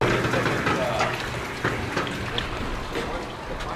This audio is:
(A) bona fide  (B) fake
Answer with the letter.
A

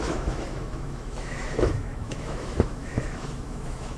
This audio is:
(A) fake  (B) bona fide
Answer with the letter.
A